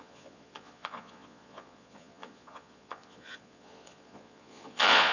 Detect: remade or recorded remade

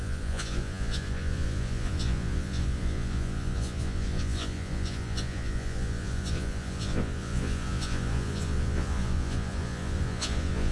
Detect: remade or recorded remade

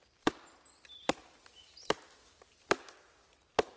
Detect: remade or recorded recorded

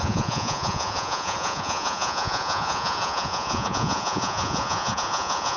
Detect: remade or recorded remade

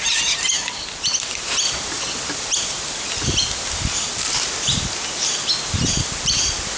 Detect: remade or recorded recorded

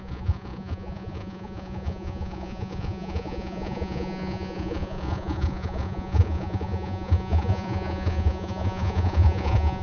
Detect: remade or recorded remade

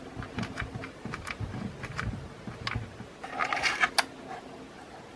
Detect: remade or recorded recorded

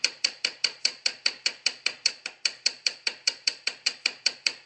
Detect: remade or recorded remade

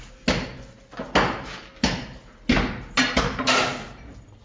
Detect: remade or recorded recorded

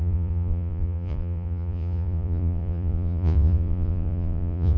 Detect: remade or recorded remade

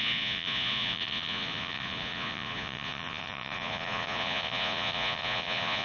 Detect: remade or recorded remade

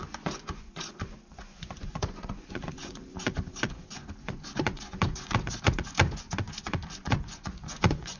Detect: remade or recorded remade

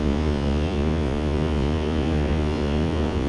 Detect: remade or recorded remade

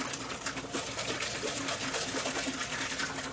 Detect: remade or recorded recorded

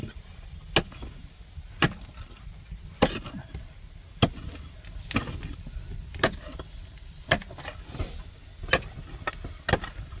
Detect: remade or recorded recorded